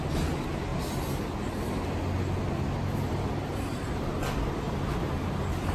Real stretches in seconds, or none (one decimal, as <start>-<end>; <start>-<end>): 0.0-5.7